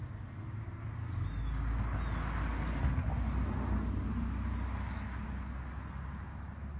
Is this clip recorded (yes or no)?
yes